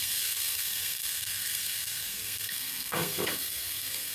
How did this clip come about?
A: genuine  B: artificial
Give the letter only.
B